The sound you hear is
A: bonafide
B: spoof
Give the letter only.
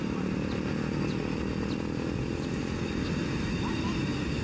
A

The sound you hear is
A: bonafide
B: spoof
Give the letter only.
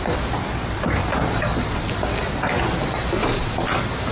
A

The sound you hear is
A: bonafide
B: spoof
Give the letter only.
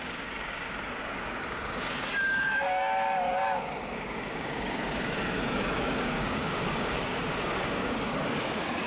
B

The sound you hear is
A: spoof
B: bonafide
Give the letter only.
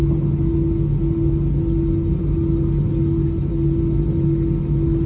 B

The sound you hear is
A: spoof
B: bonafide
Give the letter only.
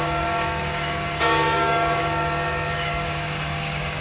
A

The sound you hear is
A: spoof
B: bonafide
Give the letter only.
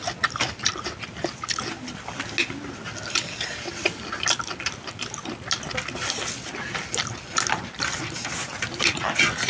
B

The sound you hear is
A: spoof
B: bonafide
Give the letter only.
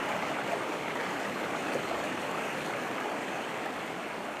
A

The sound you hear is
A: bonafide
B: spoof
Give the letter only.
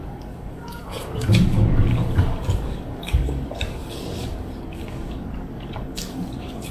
B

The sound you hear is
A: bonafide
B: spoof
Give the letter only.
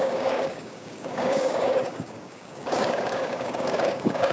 B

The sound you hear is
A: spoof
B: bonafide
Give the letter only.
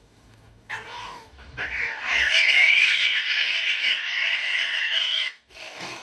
A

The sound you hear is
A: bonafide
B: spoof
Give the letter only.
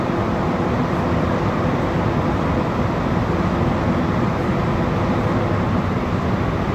A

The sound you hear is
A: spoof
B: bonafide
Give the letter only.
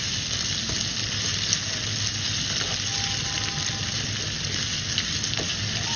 B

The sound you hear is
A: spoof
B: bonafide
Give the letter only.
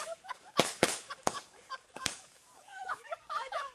A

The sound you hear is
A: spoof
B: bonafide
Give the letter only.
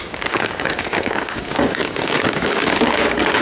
A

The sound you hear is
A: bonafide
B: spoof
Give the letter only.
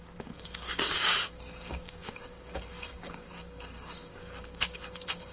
B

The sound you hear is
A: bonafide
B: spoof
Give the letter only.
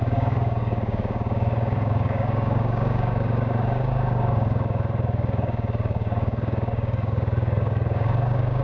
B